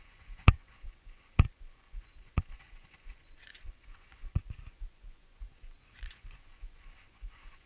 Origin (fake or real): fake